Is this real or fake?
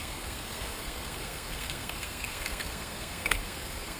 fake